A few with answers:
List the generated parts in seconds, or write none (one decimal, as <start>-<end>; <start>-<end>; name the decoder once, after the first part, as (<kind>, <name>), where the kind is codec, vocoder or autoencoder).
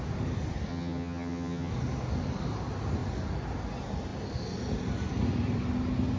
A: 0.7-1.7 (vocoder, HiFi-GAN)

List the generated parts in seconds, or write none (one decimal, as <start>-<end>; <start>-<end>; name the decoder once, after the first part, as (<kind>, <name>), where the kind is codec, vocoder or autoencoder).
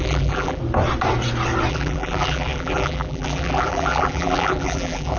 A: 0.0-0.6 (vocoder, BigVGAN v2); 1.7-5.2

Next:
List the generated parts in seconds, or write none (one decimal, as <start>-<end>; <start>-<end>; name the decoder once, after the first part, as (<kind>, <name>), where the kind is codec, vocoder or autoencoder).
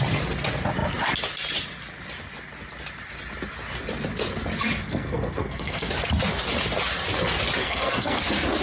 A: 4.8-5.9 (codec, SNAC); 7.6-8.2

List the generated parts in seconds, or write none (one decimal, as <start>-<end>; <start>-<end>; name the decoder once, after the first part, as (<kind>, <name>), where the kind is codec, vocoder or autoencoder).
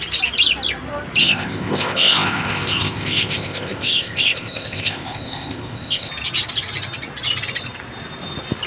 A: 1.2-6.1 (codec, ZipCodec)